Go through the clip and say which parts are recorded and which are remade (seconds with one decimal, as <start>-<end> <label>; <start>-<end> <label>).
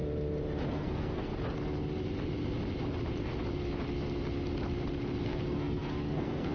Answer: 0.0-0.7 recorded; 0.7-1.3 remade; 1.3-5.2 recorded; 5.2-6.5 remade